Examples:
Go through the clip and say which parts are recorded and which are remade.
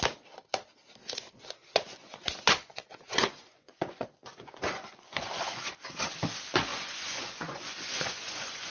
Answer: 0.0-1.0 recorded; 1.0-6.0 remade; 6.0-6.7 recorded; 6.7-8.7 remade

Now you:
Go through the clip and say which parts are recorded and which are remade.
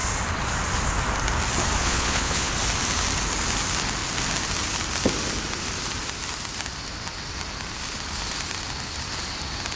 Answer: 0.0-1.8 recorded; 1.8-2.5 remade; 2.5-9.8 recorded